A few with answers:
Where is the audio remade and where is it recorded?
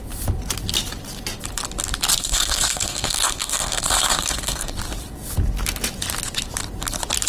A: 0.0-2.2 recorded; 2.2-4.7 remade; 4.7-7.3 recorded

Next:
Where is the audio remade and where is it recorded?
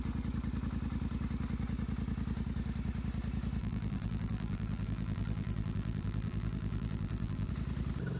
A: 0.0-3.6 recorded; 3.6-7.5 remade; 7.5-8.2 recorded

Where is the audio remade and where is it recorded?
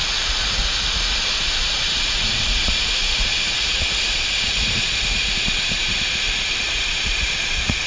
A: 0.0-5.8 remade; 5.8-6.6 recorded; 6.6-7.9 remade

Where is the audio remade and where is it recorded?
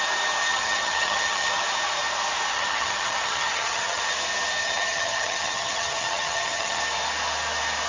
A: 0.0-0.5 recorded; 0.5-1.6 remade; 1.6-2.5 recorded; 2.5-4.0 remade; 4.0-4.6 recorded; 4.6-6.8 remade; 6.8-7.9 recorded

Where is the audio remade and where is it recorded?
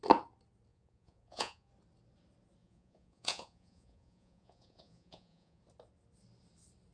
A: 0.0-0.7 recorded; 0.7-1.7 remade; 1.7-2.6 recorded; 2.6-5.6 remade; 5.6-6.9 recorded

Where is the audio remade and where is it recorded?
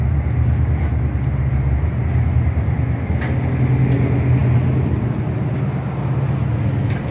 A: 0.0-7.1 recorded